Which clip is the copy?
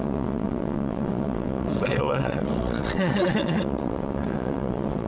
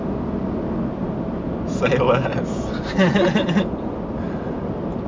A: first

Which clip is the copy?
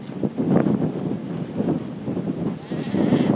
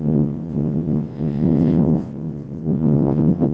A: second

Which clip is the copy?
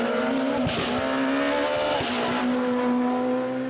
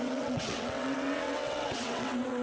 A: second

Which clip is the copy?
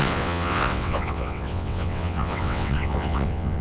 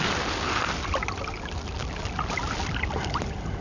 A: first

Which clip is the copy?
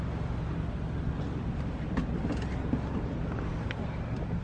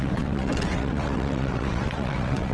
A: second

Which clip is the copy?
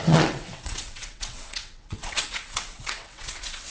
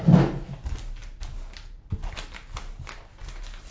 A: first